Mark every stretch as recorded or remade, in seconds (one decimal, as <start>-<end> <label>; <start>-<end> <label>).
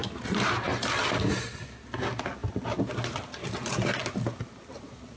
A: 0.0-5.2 recorded